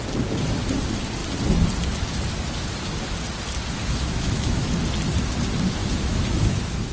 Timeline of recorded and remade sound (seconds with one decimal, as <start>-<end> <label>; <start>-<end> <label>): 0.0-3.8 recorded; 3.8-4.7 remade; 4.7-5.8 recorded; 5.8-6.9 remade